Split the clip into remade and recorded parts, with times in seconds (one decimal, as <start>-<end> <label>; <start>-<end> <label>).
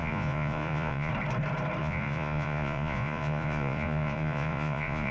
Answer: 0.0-1.1 remade; 1.1-1.8 recorded; 1.8-5.1 remade